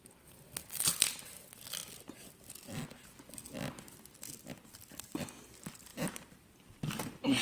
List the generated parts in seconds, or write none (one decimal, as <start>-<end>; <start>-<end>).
5.9-7.4